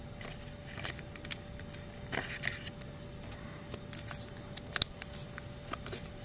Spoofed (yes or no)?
no